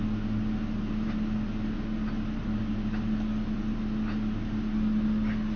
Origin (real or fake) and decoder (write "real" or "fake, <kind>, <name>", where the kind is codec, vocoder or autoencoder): real